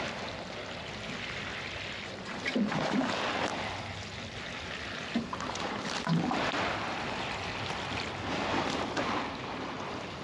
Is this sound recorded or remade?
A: remade